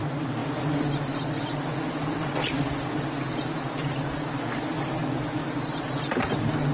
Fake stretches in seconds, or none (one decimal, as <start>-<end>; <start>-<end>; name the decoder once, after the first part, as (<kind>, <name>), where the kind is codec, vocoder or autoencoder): none